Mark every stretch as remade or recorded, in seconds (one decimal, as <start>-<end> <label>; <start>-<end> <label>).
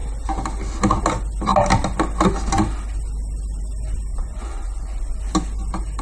0.0-4.1 recorded; 4.1-5.2 remade; 5.2-6.0 recorded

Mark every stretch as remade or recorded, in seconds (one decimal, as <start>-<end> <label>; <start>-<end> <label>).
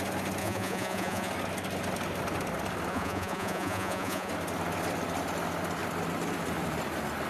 0.0-0.4 recorded; 0.4-1.3 remade; 1.3-2.9 recorded; 2.9-4.3 remade; 4.3-7.3 recorded